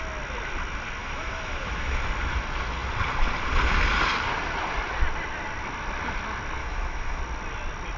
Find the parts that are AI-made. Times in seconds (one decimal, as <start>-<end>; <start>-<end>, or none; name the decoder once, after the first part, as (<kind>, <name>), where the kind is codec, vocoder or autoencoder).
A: 1.0-2.0 (autoencoder, DAC-VAE); 6.6-7.2